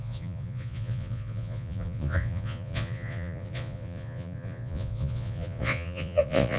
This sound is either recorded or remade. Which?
remade